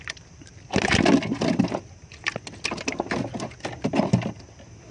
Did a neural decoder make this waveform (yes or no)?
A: no